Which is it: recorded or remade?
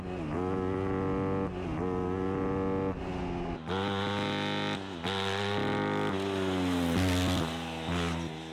recorded